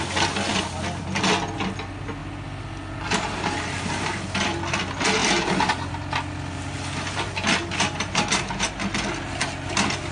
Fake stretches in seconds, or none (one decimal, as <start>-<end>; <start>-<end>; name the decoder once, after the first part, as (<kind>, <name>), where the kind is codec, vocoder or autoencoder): none